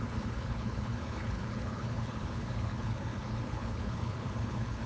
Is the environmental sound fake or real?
fake